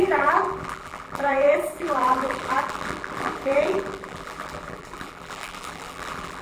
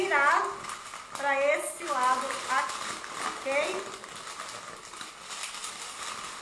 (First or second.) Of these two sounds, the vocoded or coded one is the first